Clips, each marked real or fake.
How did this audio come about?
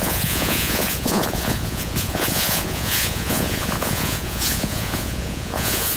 fake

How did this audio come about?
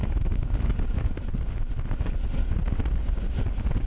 fake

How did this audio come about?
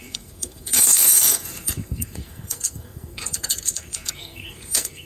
fake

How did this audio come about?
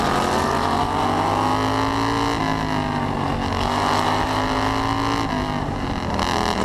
real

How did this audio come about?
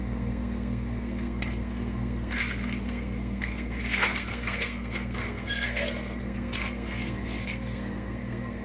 fake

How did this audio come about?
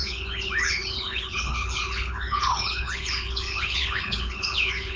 fake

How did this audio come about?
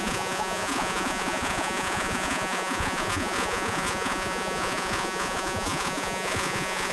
fake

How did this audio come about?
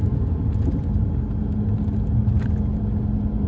real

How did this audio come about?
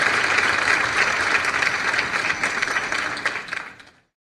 real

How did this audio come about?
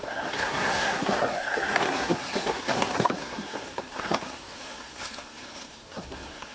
fake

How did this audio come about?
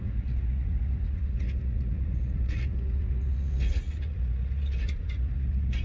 fake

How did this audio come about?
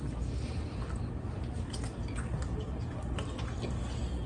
real